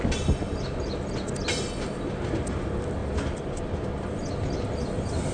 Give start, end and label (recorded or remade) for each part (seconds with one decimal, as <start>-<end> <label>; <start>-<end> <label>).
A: 0.0-5.3 recorded